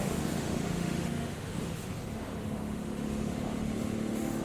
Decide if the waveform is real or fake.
fake